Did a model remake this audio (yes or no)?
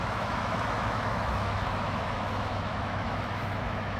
yes